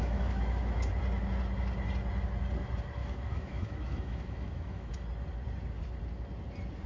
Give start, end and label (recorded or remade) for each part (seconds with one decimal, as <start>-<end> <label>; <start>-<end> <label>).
0.0-0.9 remade; 0.9-3.0 recorded; 3.0-4.9 remade; 4.9-6.9 recorded